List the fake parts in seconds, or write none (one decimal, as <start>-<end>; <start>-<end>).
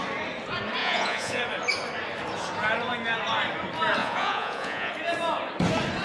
0.8-1.4; 4.0-4.9